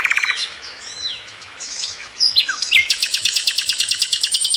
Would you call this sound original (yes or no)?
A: no